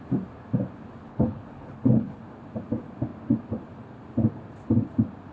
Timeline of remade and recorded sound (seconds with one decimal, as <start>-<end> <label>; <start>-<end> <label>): 0.0-1.0 recorded; 1.0-2.2 remade; 2.2-5.3 recorded